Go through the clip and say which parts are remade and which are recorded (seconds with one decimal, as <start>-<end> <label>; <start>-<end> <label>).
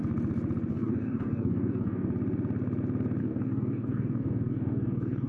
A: 0.0-0.7 recorded; 0.7-2.1 remade; 2.1-3.2 recorded; 3.2-5.3 remade